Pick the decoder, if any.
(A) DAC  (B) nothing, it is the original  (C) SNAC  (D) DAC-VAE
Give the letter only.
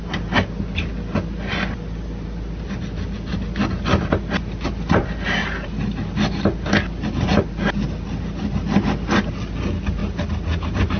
B